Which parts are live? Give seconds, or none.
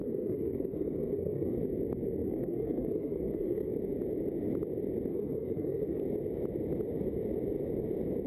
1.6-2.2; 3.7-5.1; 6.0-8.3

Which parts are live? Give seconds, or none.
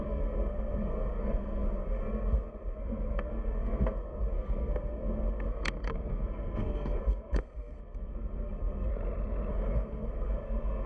8.9-9.5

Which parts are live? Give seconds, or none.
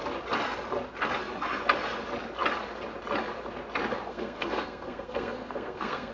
0.0-4.1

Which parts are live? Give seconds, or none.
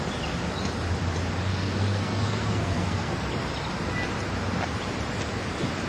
0.0-1.5; 3.3-5.9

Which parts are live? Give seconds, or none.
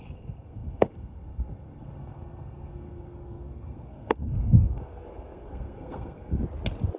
6.4-7.0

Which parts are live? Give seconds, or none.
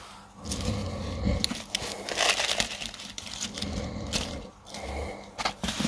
0.0-5.9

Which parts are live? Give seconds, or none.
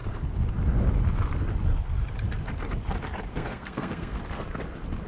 0.0-3.3; 4.2-5.1